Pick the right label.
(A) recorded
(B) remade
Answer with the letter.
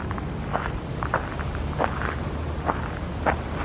A